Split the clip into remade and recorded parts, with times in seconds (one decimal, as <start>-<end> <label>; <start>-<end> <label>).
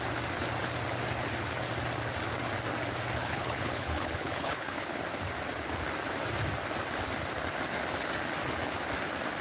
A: 0.0-3.2 recorded; 3.2-5.0 remade; 5.0-9.4 recorded